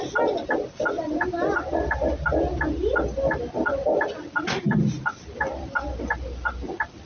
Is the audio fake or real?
real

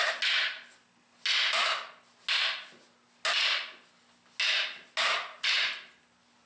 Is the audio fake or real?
real